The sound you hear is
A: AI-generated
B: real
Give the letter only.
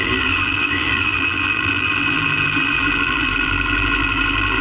A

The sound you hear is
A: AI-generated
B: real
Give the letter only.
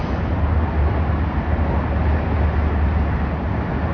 B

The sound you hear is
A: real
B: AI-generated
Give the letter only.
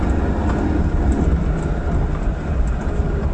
A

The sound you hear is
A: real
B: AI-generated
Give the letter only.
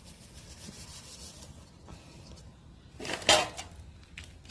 A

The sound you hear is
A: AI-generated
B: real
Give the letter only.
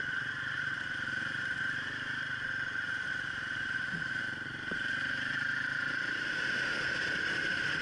A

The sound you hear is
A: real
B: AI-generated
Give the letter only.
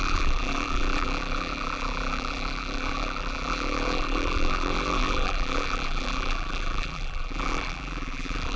B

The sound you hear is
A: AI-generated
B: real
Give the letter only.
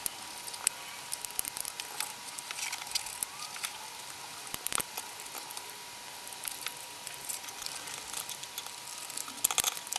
B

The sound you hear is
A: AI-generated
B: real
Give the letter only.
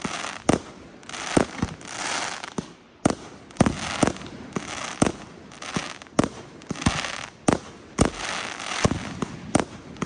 B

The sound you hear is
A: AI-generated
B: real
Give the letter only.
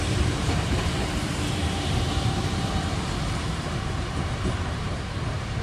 A